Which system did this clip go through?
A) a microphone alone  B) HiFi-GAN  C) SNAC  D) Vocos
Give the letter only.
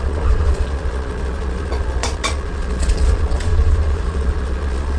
D